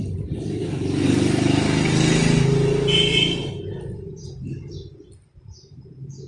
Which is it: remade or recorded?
recorded